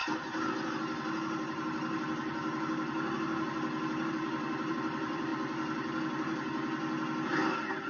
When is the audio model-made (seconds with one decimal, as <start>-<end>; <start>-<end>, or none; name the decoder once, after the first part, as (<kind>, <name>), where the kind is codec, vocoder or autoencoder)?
4.7-5.3 (vocoder, BigVGAN v2)